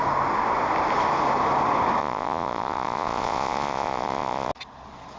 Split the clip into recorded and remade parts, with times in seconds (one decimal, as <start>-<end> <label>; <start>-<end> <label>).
0.0-2.0 recorded; 2.0-4.5 remade; 4.5-5.2 recorded